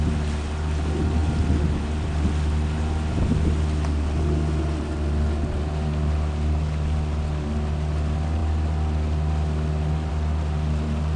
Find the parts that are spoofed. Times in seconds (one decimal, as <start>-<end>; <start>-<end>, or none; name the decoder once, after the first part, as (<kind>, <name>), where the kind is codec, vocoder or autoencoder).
none